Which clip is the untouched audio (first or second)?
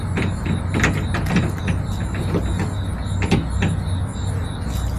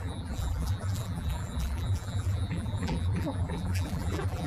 first